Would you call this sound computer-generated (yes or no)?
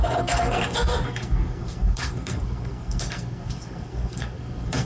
yes